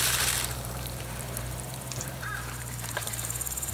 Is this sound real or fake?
fake